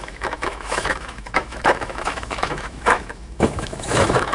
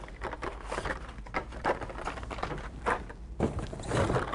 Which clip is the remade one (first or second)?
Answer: first